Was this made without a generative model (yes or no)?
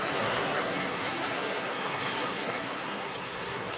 no